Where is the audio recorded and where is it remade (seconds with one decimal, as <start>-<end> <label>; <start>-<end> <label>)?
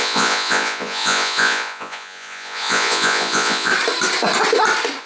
0.0-3.7 remade; 3.7-5.0 recorded